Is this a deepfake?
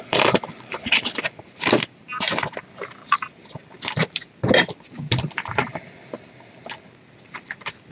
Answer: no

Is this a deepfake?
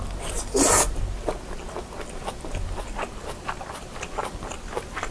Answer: no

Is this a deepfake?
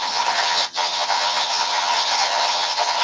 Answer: yes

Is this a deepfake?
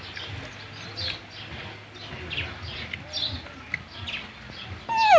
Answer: no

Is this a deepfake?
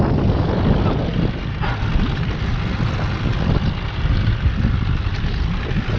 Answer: no